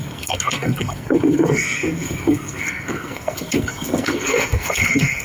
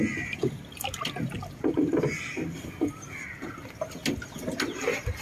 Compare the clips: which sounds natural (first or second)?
second